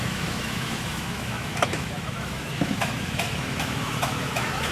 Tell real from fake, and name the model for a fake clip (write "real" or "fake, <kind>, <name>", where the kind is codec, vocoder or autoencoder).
fake, autoencoder, DAC-VAE